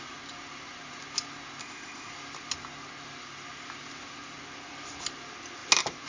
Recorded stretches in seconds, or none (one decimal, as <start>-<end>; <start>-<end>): 0.0-1.6; 2.1-6.1